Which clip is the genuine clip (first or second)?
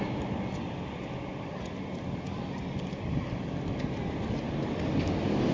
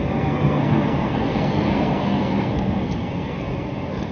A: first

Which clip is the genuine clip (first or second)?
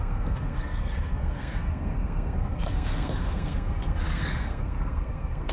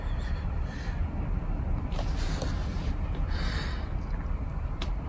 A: second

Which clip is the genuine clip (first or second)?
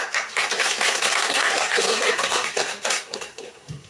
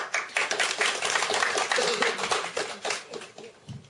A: second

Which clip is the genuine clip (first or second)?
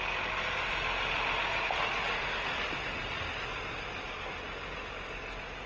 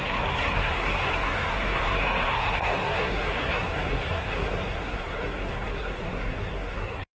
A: first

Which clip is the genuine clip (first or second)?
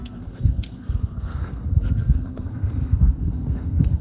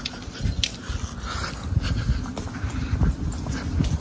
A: second